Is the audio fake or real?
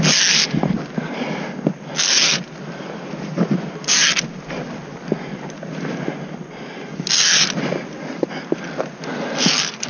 real